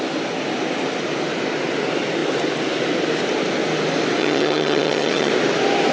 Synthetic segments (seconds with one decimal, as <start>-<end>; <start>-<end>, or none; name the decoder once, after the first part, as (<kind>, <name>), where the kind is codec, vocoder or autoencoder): 4.2-5.3 (vocoder, HiFi-GAN)

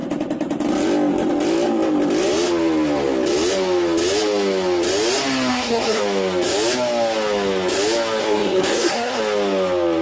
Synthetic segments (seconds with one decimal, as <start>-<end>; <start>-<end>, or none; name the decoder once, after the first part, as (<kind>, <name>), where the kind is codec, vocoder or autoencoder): 5.5-6.0 (codec, SNAC); 8.2-9.2

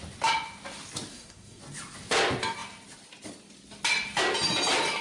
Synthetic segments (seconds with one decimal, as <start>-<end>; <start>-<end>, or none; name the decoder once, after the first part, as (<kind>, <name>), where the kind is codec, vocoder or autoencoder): 1.1-1.6 (codec, SNAC)

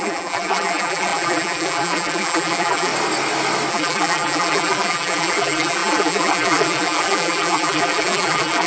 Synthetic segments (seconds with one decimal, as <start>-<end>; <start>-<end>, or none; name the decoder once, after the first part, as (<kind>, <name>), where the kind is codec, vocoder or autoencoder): 0.0-2.9 (vocoder, BigVGAN v2); 3.7-8.7

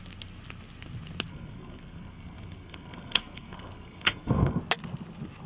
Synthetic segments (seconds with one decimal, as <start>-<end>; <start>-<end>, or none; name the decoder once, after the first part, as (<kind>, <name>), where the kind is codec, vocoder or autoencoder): 1.3-4.6 (codec, SNAC)

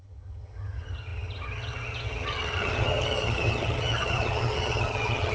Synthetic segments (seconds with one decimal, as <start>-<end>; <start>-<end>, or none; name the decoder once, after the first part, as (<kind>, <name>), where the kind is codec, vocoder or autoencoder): 0.0-5.3 (vocoder, HiFi-GAN)

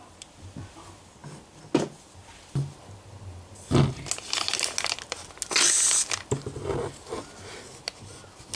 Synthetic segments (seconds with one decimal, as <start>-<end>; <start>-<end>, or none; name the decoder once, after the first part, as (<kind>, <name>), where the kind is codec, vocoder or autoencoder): none